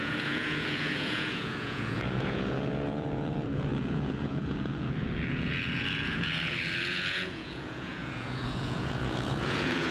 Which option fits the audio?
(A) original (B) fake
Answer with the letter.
B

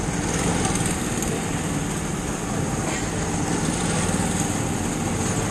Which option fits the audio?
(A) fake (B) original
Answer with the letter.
B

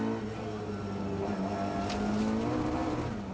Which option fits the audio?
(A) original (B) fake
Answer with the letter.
A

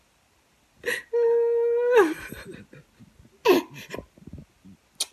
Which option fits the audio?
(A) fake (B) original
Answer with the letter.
B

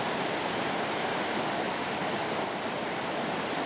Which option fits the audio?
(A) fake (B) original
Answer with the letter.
B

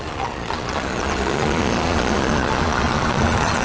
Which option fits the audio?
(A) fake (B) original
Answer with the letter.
A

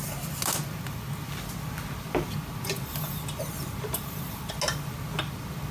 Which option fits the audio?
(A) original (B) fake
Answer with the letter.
A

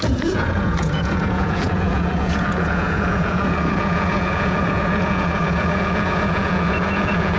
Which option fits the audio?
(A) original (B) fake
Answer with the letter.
B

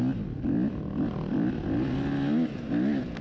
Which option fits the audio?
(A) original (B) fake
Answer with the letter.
A